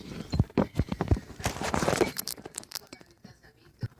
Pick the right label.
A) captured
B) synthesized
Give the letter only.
B